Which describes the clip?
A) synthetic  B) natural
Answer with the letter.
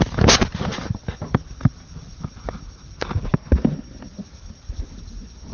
B